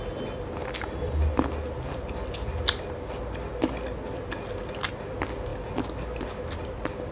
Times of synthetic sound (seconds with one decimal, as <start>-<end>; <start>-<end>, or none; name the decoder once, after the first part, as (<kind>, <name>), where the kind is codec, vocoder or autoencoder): none